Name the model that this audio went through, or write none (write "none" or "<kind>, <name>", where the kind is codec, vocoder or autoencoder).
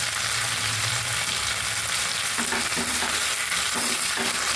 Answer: none